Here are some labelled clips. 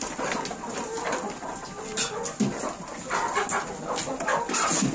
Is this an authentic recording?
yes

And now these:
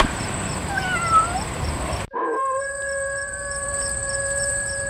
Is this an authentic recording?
no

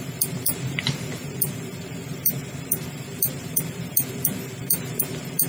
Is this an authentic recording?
no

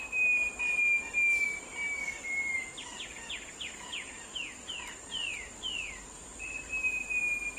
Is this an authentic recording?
yes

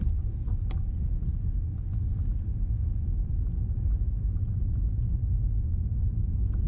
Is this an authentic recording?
yes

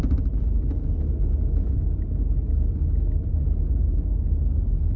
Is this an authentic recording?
yes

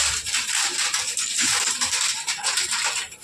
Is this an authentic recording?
no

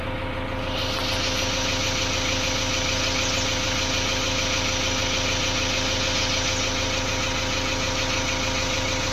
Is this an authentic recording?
yes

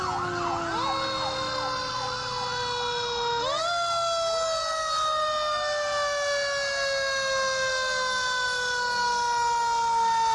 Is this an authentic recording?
yes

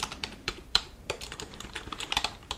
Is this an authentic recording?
no